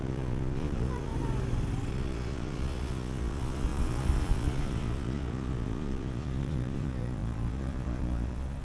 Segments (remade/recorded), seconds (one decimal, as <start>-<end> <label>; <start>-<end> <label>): 0.0-1.1 remade; 1.1-1.9 recorded; 1.9-8.6 remade